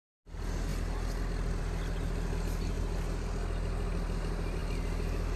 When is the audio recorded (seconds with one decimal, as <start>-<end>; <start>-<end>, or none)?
0.0-5.4